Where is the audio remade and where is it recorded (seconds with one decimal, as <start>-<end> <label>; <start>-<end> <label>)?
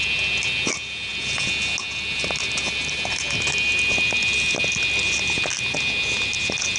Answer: 0.0-6.8 recorded